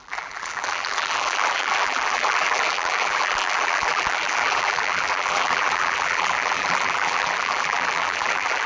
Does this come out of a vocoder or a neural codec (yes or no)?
yes